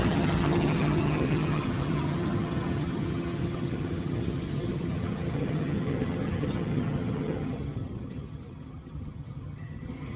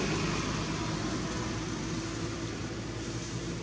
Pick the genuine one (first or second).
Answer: second